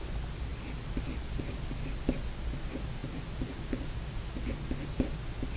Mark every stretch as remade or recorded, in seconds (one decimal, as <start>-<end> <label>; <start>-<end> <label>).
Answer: 0.0-5.6 recorded